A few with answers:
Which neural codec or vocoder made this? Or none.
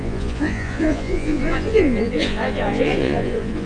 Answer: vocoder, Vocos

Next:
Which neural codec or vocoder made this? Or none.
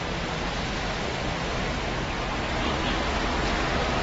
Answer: none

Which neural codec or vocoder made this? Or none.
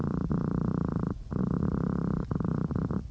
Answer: vocoder, Vocos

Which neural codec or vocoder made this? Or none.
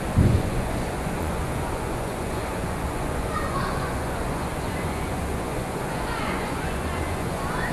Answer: vocoder, Vocos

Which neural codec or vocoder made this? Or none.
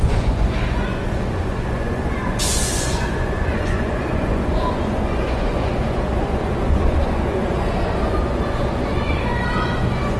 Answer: vocoder, Vocos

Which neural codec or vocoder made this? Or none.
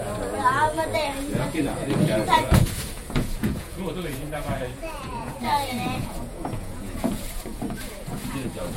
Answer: vocoder, Vocos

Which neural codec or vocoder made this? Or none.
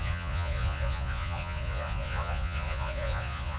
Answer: vocoder, Vocos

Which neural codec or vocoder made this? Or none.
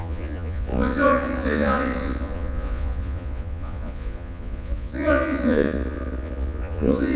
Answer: vocoder, Vocos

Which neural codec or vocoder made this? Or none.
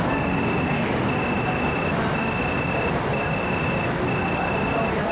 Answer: none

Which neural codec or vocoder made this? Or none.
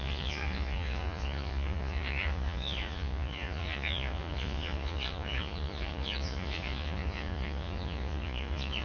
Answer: vocoder, Vocos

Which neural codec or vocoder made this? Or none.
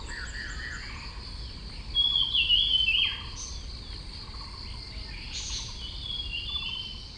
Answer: none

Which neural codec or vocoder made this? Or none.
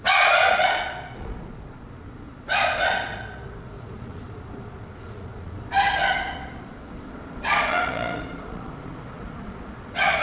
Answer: vocoder, Vocos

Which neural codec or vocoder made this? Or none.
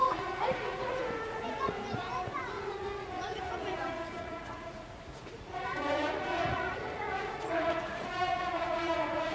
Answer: vocoder, Vocos